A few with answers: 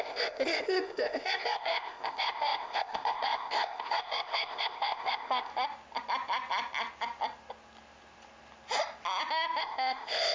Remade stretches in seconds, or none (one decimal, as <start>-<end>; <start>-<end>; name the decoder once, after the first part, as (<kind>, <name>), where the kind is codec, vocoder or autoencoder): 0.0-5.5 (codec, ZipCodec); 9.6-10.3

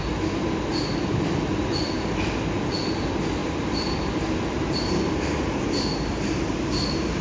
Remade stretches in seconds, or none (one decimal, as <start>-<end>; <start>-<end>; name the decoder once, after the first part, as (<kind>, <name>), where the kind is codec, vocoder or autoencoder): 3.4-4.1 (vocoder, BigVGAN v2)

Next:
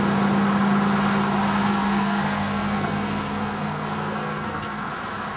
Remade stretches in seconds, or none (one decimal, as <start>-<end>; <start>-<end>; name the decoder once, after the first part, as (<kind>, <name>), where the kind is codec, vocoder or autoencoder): 1.7-4.9 (codec, SNAC)

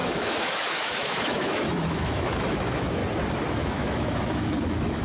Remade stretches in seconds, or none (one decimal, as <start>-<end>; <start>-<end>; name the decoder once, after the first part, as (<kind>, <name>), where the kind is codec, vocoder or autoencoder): 0.0-3.0 (autoencoder, DAC-VAE); 3.6-5.0

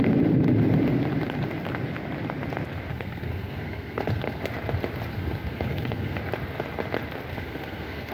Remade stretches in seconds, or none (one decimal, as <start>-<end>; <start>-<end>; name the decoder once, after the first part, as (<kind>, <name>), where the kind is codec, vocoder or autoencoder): 2.9-4.4 (codec, SNAC); 5.1-6.2; 7.3-8.1